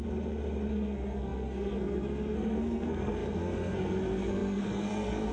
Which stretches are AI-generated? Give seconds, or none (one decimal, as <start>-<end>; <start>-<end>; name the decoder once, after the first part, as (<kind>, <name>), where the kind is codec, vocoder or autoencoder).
0.7-5.3 (codec, SNAC)